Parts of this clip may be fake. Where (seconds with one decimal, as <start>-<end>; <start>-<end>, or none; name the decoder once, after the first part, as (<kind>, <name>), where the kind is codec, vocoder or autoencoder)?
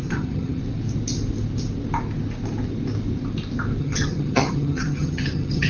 0.0-0.6 (vocoder, HiFi-GAN); 3.8-5.7